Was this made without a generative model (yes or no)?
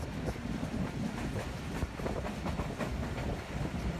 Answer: yes